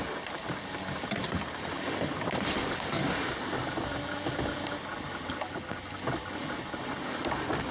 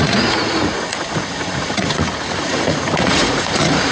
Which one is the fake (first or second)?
second